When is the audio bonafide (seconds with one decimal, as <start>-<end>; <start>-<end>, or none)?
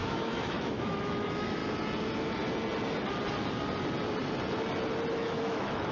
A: 1.6-5.1